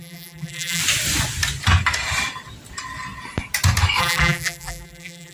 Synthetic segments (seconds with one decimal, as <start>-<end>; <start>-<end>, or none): 0.0-0.8; 4.0-5.3